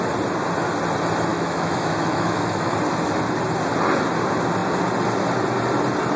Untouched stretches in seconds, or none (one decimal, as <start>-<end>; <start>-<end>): 0.0-1.3; 2.7-6.2